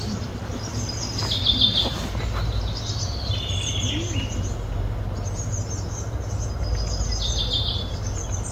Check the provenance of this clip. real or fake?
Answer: real